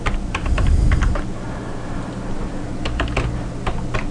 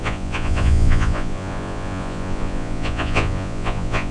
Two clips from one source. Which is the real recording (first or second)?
first